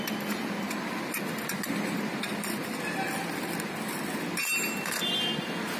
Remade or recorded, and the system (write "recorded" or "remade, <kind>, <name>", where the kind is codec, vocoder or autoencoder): recorded